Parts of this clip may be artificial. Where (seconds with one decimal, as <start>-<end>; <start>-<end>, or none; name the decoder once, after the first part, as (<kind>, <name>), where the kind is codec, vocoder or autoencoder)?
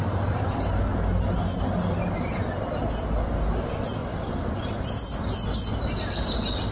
4.0-4.8 (vocoder, BigVGAN v2)